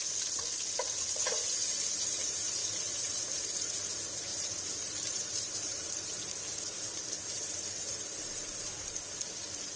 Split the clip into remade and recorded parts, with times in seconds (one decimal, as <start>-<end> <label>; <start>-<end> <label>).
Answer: 0.0-4.3 recorded; 4.3-8.2 remade; 8.2-9.8 recorded